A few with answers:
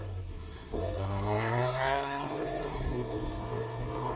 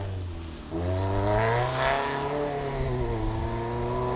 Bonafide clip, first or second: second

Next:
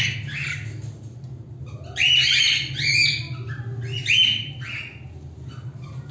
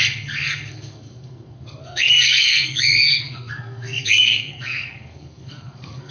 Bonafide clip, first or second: first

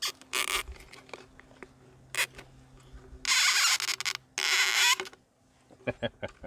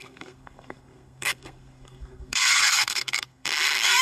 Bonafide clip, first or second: first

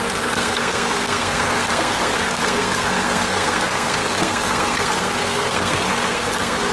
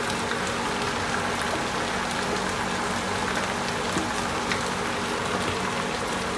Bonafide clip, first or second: second